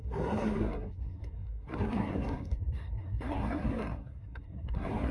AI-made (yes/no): yes